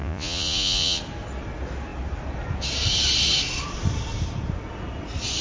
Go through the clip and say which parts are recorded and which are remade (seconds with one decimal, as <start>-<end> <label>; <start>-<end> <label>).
0.0-1.0 remade; 1.0-5.4 recorded